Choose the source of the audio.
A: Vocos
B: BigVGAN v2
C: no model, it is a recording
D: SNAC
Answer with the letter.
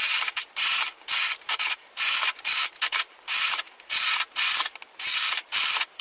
B